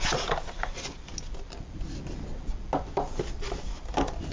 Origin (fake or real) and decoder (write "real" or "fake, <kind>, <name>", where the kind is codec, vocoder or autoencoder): real